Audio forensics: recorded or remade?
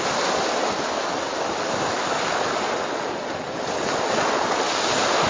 recorded